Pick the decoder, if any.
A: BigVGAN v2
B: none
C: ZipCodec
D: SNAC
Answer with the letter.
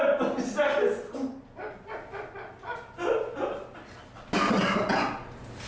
B